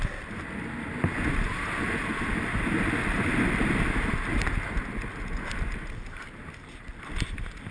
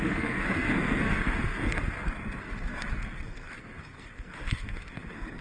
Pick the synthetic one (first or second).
second